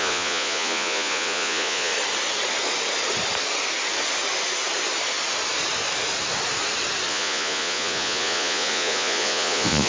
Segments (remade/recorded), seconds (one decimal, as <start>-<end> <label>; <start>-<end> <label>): 0.0-1.9 remade; 1.9-7.1 recorded; 7.1-9.9 remade